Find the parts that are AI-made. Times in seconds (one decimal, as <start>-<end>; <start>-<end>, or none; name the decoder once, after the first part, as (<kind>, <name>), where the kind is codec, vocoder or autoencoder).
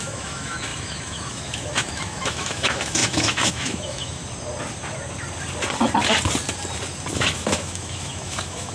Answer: 0.0-4.2 (autoencoder, DAC-VAE); 7.1-8.7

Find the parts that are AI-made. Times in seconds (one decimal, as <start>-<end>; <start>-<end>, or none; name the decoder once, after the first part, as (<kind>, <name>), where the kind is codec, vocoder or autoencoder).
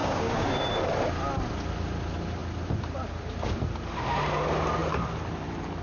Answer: 0.0-0.7 (codec, DAC)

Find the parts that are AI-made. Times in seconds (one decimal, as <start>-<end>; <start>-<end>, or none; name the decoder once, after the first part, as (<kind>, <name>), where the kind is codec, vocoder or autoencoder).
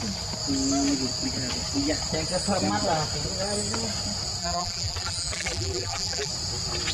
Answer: 4.4-6.3 (vocoder, BigVGAN v2)